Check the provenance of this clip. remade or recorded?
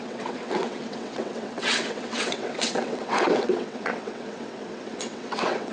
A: remade